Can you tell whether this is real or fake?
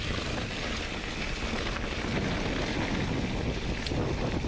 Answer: real